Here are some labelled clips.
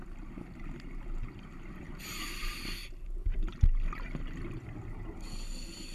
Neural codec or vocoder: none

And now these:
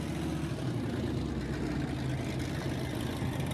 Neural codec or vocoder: none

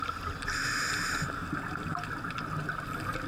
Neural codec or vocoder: none